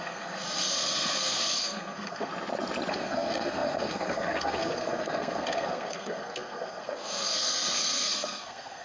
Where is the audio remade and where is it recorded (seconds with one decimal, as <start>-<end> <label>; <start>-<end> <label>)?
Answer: 0.0-2.3 remade; 2.3-2.9 recorded; 2.9-8.8 remade